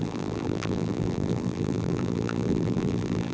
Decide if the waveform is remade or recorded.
remade